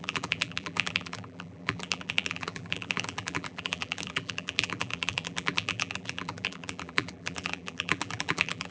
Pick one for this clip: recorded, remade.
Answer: remade